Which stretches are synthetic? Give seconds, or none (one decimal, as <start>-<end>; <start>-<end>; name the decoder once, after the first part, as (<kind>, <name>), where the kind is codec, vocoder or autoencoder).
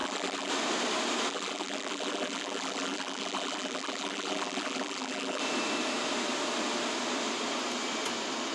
0.0-0.5 (vocoder, BigVGAN v2); 1.3-5.4